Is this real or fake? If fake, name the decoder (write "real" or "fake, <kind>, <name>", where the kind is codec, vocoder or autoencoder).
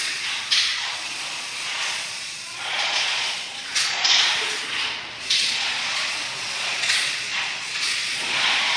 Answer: fake, vocoder, Vocos